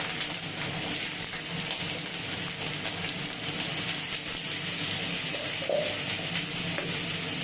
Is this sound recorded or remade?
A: recorded